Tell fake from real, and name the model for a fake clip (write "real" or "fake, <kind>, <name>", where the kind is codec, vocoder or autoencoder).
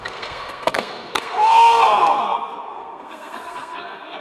fake, codec, SNAC